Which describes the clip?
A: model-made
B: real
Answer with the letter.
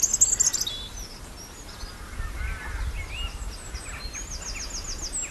B